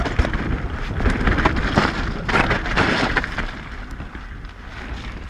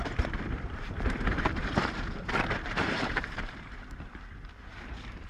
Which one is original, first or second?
first